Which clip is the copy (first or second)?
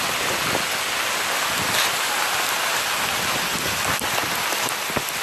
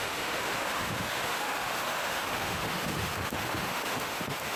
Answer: second